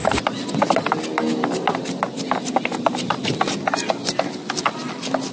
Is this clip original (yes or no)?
yes